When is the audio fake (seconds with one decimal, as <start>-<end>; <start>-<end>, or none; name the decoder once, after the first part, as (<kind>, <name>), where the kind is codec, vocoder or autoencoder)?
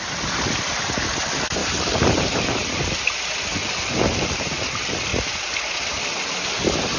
1.6-2.6 (vocoder, BigVGAN v2); 3.6-4.6